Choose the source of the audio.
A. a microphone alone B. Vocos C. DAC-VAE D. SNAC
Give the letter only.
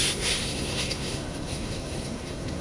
D